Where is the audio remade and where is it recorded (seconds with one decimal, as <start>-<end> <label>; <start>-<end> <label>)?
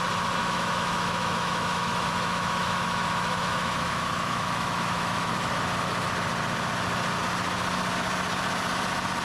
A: 0.0-0.4 recorded; 0.4-5.3 remade; 5.3-9.2 recorded